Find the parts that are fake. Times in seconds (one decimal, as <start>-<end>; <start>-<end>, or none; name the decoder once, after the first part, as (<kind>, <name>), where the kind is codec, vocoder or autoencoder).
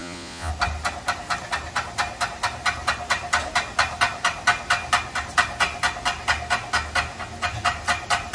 0.0-0.5 (vocoder, Vocos)